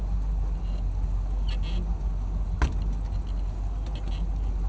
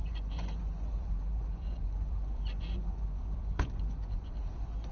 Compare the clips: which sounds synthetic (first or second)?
second